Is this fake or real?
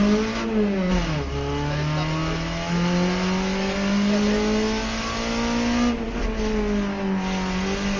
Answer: real